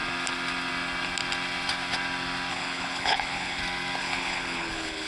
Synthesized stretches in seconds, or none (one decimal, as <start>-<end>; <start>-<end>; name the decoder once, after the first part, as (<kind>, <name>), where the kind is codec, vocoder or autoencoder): 2.5-3.6 (codec, HILCodec); 4.0-5.1